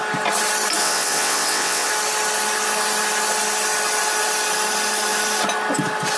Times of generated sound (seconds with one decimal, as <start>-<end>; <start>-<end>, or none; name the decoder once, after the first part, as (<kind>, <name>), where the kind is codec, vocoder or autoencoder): 0.8-1.9 (vocoder, WaveNeXt)